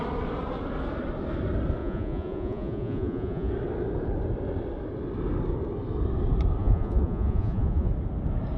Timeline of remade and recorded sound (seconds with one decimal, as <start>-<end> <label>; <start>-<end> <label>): 0.0-1.8 recorded; 1.8-3.5 remade; 3.5-6.6 recorded; 6.6-7.9 remade; 7.9-8.6 recorded